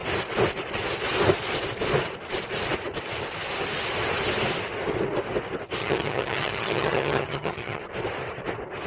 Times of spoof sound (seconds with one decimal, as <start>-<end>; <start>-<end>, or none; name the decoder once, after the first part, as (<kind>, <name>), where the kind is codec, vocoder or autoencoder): 5.8-7.8 (vocoder, HiFi-GAN)